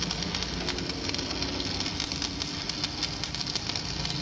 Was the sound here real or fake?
real